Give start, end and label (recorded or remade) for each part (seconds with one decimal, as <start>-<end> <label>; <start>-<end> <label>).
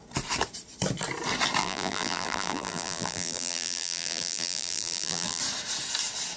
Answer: 0.0-1.6 recorded; 1.6-5.4 remade; 5.4-6.4 recorded